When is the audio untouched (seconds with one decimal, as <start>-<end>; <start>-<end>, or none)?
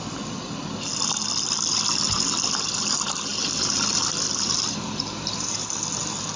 0.0-3.3; 5.7-6.4